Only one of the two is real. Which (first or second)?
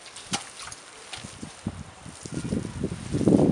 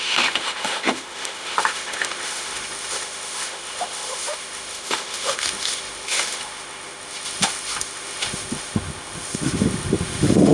first